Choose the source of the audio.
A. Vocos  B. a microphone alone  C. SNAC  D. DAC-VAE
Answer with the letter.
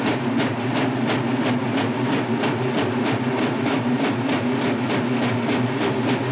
B